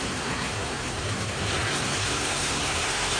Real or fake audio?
fake